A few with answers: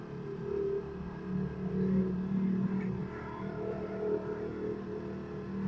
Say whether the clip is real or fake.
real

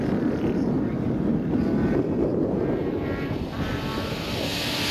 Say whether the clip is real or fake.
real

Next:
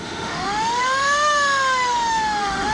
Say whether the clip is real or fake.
fake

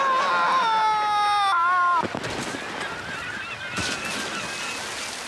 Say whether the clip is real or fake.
real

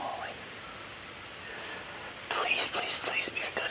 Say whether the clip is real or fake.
real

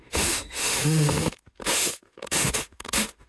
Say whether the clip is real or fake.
fake